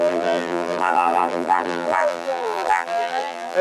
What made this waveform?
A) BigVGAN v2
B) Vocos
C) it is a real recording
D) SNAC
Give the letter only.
A